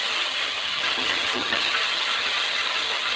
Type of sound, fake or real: fake